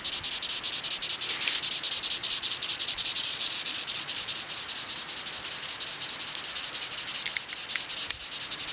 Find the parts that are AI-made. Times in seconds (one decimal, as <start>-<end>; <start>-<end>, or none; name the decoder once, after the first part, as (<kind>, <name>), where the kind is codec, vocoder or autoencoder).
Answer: 2.2-4.6 (vocoder, Vocos)